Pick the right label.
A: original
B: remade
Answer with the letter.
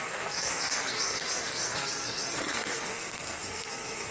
B